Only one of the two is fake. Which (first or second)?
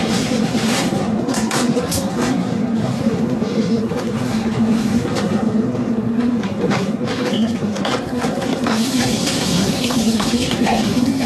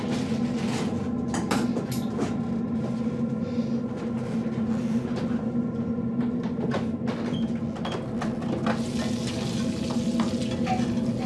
first